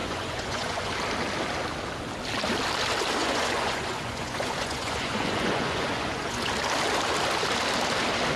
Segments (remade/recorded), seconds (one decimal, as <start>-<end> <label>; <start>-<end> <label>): 0.0-0.9 remade; 0.9-3.2 recorded; 3.2-6.5 remade; 6.5-8.4 recorded